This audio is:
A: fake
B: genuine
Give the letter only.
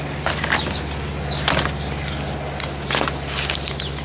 B